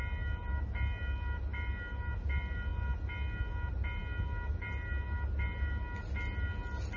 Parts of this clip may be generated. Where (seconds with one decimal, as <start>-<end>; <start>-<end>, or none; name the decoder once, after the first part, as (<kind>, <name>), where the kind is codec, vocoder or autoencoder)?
none